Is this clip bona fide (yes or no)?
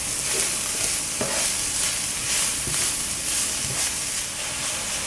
yes